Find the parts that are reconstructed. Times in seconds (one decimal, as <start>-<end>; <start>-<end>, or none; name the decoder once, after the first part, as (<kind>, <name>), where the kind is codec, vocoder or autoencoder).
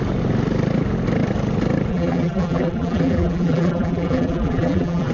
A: 1.9-5.1 (vocoder, BigVGAN v2)